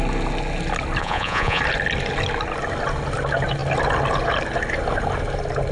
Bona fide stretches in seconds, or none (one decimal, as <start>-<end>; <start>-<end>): 0.0-1.0; 1.6-5.7